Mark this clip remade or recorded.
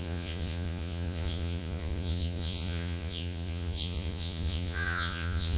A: remade